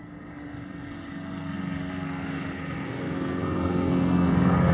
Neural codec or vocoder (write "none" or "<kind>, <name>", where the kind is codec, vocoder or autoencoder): codec, SNAC